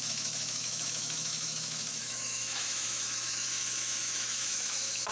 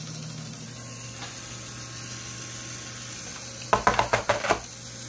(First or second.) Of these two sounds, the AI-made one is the first